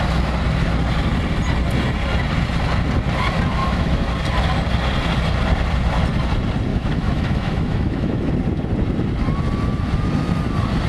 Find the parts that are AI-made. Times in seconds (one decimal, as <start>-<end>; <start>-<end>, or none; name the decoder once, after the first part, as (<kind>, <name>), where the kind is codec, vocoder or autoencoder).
3.6-4.1 (autoencoder, DAC-VAE); 6.7-8.3

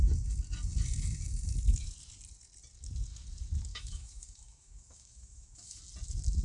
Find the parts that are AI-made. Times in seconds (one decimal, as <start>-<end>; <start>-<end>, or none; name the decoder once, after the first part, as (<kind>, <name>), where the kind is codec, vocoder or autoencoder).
3.7-5.8 (autoencoder, DAC-VAE)

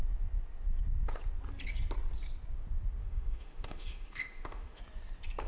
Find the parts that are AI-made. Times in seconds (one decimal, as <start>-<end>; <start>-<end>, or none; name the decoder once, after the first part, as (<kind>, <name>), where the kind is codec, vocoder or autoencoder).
3.0-4.8 (autoencoder, DAC-VAE)